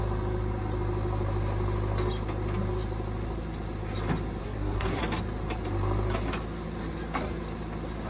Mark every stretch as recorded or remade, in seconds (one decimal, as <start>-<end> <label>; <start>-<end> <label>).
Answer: 0.0-4.4 recorded; 4.4-5.0 remade; 5.0-8.1 recorded

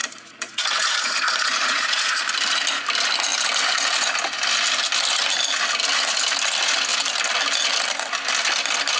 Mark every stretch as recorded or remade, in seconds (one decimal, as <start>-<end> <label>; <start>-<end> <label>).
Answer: 0.0-2.2 remade; 2.2-9.0 recorded

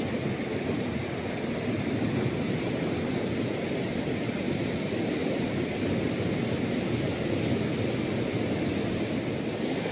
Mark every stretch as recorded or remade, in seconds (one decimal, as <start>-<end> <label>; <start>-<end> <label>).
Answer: 0.0-9.9 recorded

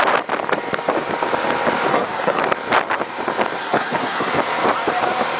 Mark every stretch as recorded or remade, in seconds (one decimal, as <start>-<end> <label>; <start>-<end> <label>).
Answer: 0.0-1.9 recorded; 1.9-2.4 remade; 2.4-3.6 recorded; 3.6-4.3 remade; 4.3-5.4 recorded

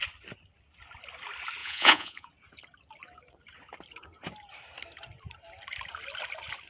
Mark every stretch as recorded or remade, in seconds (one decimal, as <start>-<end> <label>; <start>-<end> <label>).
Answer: 0.0-1.6 recorded; 1.6-2.3 remade; 2.3-6.7 recorded

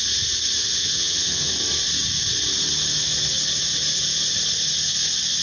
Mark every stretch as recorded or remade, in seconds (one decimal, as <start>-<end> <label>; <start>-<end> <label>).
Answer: 0.0-0.6 recorded; 0.6-1.5 remade; 1.5-5.4 recorded

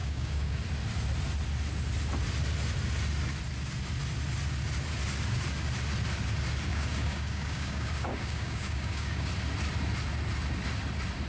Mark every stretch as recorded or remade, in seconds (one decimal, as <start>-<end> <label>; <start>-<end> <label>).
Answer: 0.0-0.6 remade; 0.6-6.7 recorded; 6.7-9.3 remade; 9.3-11.3 recorded